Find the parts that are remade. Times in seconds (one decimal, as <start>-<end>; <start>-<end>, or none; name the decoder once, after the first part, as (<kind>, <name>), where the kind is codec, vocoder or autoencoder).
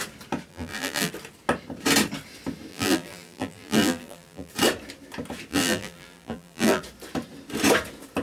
0.5-1.1 (vocoder, BigVGAN v2); 2.7-4.5; 5.5-6.8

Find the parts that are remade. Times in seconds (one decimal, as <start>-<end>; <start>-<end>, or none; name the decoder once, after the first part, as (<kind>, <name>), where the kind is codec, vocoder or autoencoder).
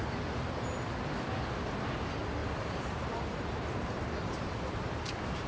2.4-5.0 (vocoder, BigVGAN v2)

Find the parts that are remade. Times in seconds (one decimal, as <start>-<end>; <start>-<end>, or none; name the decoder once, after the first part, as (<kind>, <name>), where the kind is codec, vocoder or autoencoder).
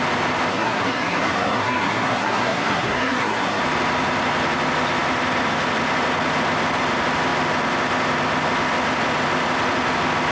0.5-3.6 (codec, SNAC)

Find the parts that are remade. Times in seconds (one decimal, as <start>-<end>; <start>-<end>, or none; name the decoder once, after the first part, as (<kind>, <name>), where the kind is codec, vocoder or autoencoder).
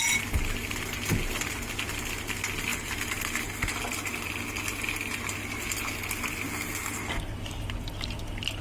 none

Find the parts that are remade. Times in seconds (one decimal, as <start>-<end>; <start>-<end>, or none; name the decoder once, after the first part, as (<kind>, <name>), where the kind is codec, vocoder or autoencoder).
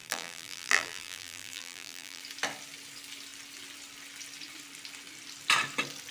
0.0-2.2 (vocoder, BigVGAN v2)